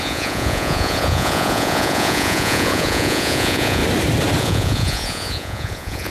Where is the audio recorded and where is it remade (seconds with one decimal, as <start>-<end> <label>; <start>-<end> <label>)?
0.0-3.8 remade; 3.8-4.4 recorded; 4.4-6.1 remade